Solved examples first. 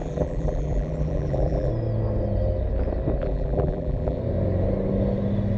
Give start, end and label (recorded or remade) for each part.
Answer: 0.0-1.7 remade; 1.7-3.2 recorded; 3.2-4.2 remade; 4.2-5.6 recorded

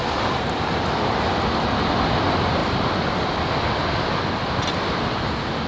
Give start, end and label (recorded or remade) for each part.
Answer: 0.0-1.1 remade; 1.1-5.7 recorded